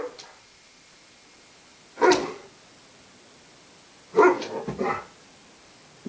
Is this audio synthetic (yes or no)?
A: no